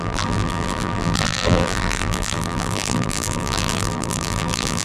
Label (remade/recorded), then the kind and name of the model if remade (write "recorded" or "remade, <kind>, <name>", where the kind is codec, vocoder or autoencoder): remade, vocoder, BigVGAN v2